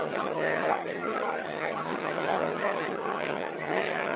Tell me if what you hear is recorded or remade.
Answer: remade